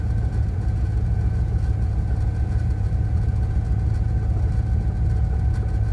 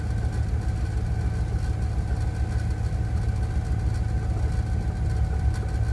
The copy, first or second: first